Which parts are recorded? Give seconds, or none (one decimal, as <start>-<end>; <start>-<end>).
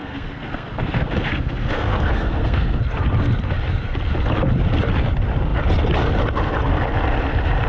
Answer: 2.8-7.7